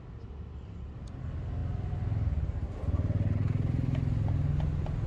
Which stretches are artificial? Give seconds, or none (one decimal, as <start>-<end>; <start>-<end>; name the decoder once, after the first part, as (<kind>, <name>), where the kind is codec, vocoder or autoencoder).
none

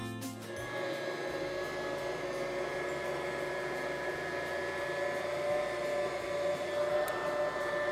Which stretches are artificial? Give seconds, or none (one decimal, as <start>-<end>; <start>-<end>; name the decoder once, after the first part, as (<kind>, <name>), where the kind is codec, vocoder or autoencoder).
none